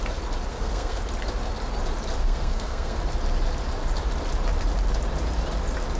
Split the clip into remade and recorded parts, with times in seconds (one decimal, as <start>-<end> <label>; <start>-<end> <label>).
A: 0.0-0.5 recorded; 0.5-1.0 remade; 1.0-2.2 recorded; 2.2-3.0 remade; 3.0-6.0 recorded